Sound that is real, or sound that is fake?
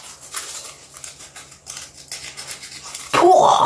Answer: real